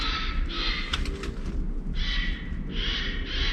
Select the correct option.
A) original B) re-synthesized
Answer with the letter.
A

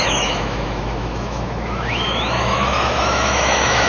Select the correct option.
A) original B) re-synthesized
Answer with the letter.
B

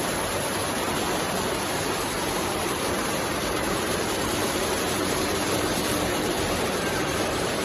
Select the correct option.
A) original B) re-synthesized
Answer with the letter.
B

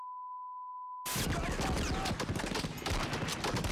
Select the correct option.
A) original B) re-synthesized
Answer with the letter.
A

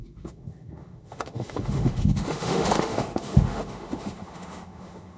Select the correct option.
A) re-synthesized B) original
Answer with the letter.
A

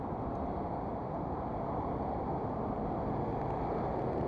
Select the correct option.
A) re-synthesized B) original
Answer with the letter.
B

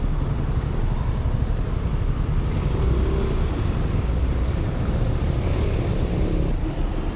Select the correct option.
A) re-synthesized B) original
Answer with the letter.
B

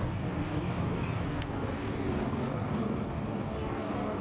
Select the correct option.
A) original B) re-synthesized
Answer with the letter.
B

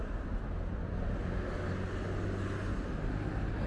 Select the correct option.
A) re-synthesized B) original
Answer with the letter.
B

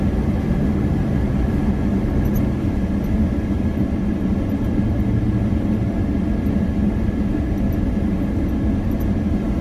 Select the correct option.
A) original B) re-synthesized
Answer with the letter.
A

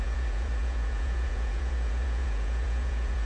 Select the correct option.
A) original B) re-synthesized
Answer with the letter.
B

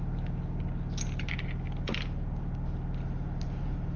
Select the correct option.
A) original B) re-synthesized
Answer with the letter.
A